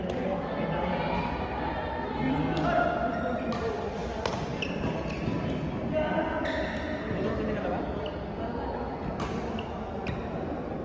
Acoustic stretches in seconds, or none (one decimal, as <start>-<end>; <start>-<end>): 0.0-10.8